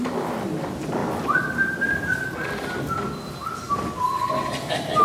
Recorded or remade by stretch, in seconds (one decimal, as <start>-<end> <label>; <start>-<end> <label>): 0.0-5.0 recorded